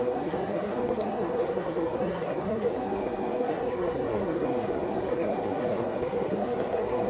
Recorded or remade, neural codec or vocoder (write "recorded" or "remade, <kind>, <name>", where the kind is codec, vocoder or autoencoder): remade, codec, SNAC